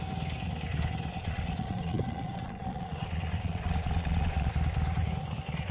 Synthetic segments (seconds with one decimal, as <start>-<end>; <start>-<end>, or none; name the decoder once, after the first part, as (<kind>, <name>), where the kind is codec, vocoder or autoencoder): 1.1-4.5 (vocoder, Vocos)